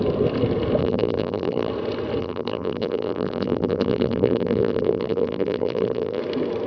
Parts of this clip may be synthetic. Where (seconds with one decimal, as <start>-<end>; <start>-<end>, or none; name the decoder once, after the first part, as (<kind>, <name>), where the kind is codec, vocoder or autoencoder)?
0.8-1.7 (vocoder, BigVGAN v2); 2.2-6.2

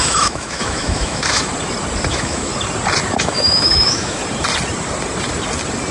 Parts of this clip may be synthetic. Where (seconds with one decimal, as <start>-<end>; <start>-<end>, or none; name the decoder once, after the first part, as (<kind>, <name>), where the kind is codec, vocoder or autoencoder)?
0.0-1.5 (autoencoder, DAC-VAE); 2.1-2.5; 3.2-4.2

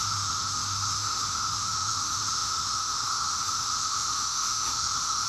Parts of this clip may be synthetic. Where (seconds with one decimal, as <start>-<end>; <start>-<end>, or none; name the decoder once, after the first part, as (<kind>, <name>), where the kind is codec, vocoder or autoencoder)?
0.0-5.3 (autoencoder, DAC-VAE)

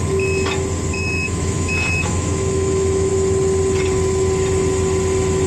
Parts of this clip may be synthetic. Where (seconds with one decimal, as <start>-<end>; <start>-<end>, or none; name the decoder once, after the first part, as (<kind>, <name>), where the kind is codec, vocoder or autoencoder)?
0.9-3.1 (autoencoder, DAC-VAE)

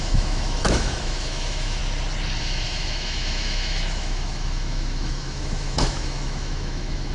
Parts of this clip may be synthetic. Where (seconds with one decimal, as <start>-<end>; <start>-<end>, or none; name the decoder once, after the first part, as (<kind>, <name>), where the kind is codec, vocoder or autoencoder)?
0.0-1.8 (autoencoder, DAC-VAE); 2.4-7.1